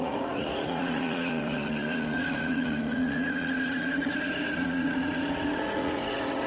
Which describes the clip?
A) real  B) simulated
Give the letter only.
B